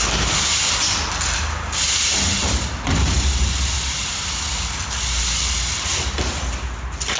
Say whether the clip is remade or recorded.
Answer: recorded